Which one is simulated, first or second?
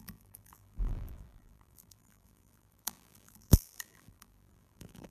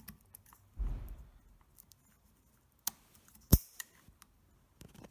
first